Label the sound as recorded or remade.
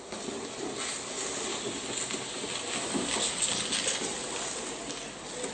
recorded